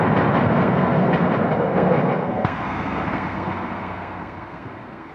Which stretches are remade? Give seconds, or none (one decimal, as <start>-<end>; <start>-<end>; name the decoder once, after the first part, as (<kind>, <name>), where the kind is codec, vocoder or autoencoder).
0.4-1.1 (codec, SNAC); 1.7-5.1